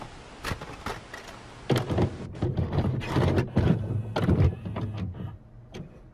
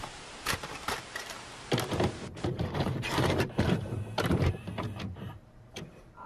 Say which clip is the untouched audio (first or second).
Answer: first